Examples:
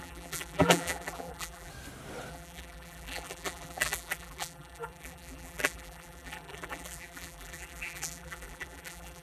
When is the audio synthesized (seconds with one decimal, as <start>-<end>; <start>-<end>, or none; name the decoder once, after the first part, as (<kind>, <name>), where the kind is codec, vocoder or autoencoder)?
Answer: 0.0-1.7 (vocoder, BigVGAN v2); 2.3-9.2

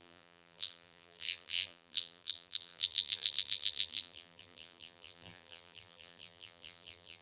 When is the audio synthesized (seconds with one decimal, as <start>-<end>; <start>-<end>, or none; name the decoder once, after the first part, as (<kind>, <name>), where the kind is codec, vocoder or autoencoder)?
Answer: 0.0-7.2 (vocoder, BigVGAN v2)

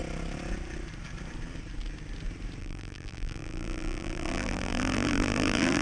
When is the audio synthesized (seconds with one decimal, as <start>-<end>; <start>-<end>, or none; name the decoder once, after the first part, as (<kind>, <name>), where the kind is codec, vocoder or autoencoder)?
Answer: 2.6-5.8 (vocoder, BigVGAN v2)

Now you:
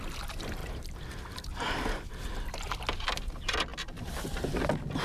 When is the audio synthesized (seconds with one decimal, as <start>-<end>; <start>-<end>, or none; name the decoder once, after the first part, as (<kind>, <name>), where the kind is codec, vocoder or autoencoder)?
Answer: 0.6-2.1 (vocoder, BigVGAN v2); 3.7-4.6

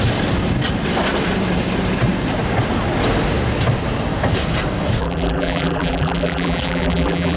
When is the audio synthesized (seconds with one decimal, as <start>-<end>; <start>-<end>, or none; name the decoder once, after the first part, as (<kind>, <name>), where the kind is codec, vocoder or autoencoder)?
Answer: 5.0-7.4 (vocoder, BigVGAN v2)

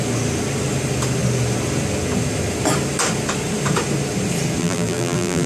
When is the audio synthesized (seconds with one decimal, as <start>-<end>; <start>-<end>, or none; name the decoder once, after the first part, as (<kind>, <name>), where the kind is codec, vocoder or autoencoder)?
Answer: 4.6-5.5 (vocoder, BigVGAN v2)

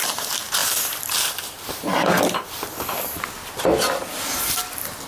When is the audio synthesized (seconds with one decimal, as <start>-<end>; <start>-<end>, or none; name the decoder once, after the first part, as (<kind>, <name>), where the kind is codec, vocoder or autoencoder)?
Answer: 0.6-3.2 (vocoder, BigVGAN v2)

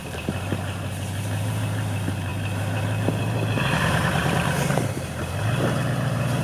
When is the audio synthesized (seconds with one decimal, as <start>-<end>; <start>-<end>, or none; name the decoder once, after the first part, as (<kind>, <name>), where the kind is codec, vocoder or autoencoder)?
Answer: 0.0-6.4 (vocoder, BigVGAN v2)